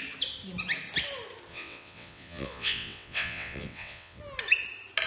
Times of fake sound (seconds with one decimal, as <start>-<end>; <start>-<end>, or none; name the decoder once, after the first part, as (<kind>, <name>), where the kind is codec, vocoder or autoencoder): 1.5-4.2 (vocoder, WaveNeXt)